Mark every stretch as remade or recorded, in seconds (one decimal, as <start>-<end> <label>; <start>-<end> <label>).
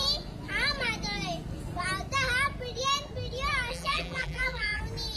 0.0-3.7 recorded; 3.7-4.8 remade; 4.8-5.2 recorded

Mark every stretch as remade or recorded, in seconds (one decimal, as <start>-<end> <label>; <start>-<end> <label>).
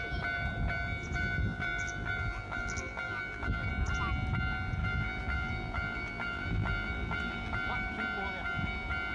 0.0-1.2 recorded; 1.2-3.7 remade; 3.7-4.8 recorded; 4.8-7.5 remade; 7.5-9.1 recorded